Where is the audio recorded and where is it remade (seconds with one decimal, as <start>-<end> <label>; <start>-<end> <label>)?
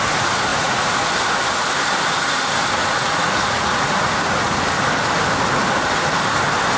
0.0-0.5 recorded; 0.5-1.1 remade; 1.1-2.8 recorded; 2.8-4.6 remade; 4.6-6.8 recorded